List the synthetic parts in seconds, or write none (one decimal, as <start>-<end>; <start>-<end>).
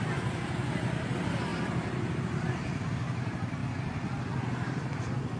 0.0-3.6; 4.4-5.4